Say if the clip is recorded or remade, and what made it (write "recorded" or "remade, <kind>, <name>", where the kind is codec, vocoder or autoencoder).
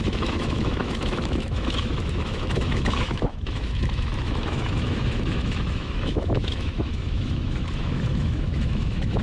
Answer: remade, autoencoder, DAC-VAE